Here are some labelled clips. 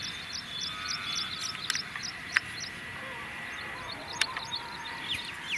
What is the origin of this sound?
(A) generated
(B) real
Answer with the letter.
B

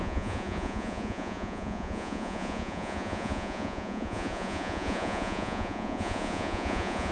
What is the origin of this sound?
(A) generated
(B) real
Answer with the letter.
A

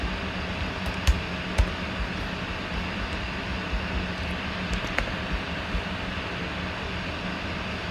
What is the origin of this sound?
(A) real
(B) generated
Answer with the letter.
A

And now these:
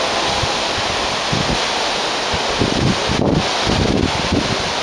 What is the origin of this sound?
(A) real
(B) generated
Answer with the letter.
A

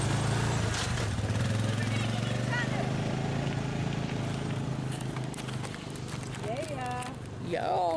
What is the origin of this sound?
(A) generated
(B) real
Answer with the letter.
B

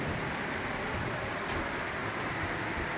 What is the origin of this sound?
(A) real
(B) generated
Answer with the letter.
A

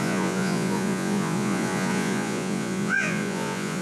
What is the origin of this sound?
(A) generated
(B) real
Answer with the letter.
A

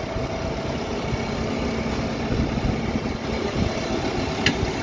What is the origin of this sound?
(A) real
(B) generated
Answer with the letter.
A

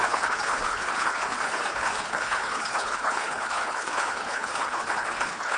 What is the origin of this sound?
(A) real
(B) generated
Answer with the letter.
B